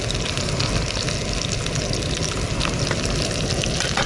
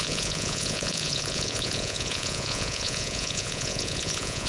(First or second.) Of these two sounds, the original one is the first